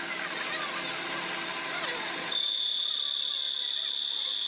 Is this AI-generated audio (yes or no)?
no